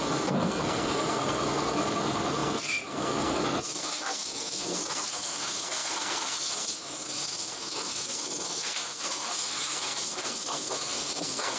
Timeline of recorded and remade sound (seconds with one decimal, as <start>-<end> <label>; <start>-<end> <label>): 0.0-11.6 remade